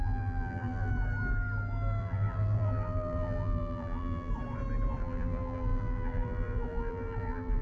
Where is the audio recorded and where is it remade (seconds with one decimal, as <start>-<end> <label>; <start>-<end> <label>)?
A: 0.0-0.9 remade; 0.9-2.0 recorded; 2.0-4.3 remade; 4.3-5.0 recorded; 5.0-7.6 remade